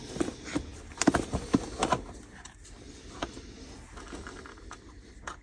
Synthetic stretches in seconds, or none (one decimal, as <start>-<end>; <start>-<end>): none